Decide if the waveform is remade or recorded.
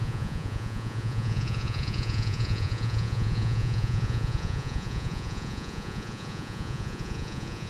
remade